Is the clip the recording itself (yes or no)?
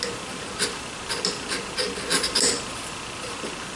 yes